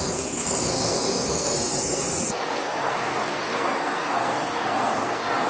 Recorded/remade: remade